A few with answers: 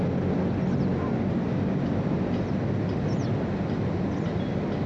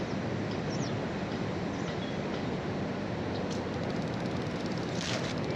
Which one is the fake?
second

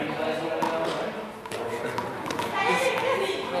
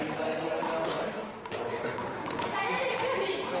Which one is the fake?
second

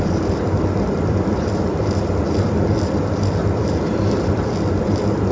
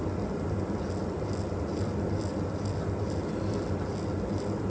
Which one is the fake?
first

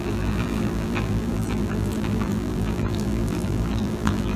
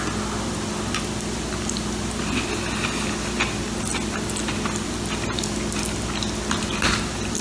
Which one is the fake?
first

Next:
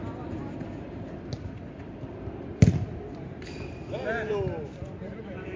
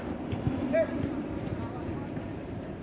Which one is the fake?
second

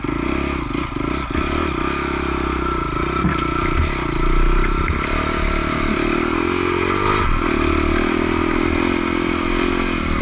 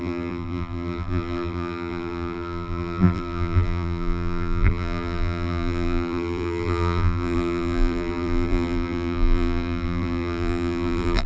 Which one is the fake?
second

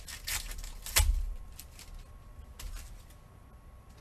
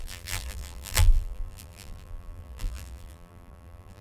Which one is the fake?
second